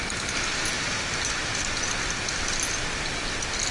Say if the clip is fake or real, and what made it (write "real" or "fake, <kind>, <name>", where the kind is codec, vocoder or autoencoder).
real